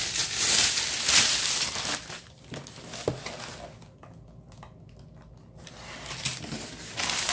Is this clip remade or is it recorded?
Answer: recorded